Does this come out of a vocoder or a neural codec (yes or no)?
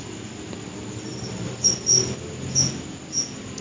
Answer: no